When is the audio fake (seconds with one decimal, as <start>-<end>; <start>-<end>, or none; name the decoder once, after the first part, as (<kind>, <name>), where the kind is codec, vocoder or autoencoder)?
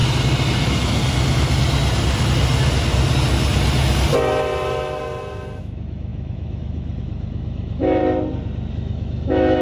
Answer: 0.6-1.0 (autoencoder, DAC-VAE); 5.6-8.0; 8.7-9.6